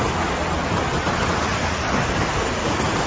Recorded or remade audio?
recorded